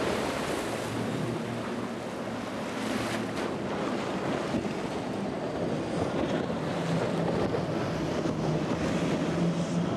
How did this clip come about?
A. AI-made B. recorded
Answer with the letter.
B